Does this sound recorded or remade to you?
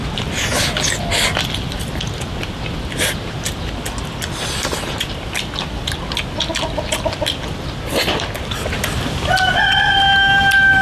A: recorded